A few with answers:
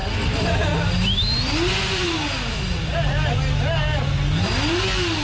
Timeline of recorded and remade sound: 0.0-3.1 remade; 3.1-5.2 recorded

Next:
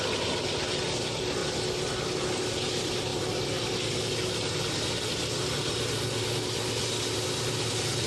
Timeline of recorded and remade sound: 0.0-8.1 recorded

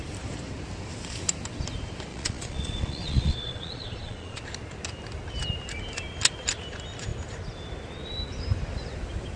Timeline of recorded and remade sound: 0.0-2.1 recorded; 2.1-4.4 remade; 4.4-9.4 recorded

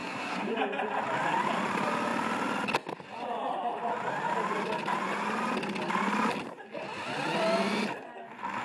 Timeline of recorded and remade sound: 0.0-0.6 remade; 0.6-8.6 recorded

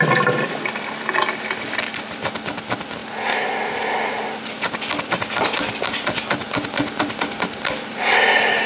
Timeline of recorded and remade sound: 0.0-8.7 recorded

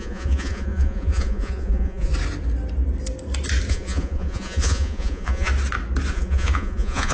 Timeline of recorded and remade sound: 0.0-2.1 remade; 2.1-3.7 recorded; 3.7-5.5 remade; 5.5-6.1 recorded; 6.1-7.1 remade